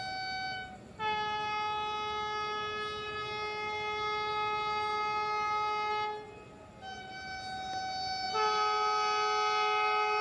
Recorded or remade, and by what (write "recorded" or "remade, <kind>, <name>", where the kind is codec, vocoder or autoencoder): recorded